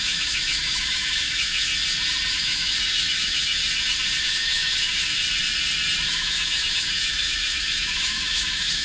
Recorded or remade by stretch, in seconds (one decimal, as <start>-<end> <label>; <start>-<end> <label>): 0.0-1.7 remade; 1.7-2.3 recorded; 2.3-3.6 remade; 3.6-4.2 recorded; 4.2-5.2 remade; 5.2-6.1 recorded; 6.1-8.8 remade